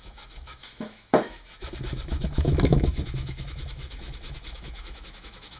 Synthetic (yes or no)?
yes